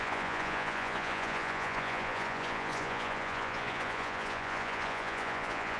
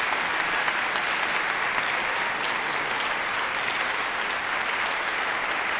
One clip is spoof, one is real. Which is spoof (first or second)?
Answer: first